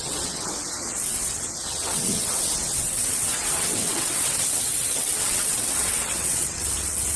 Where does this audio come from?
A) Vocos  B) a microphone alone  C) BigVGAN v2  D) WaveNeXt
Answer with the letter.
D